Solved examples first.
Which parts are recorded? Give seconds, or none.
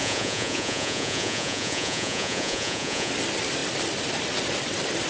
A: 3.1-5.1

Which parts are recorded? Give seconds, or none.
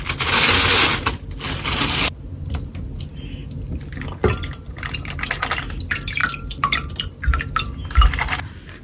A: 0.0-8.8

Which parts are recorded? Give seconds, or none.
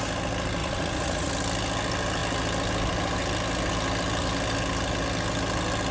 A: 0.0-0.6; 1.3-5.9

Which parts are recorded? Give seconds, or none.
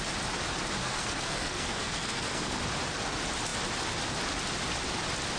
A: 0.0-0.8; 2.6-5.4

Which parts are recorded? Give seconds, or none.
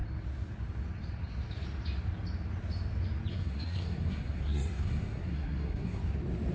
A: 0.0-3.3; 6.0-6.5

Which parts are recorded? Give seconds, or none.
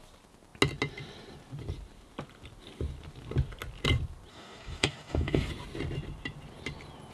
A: 0.0-4.3; 5.5-7.1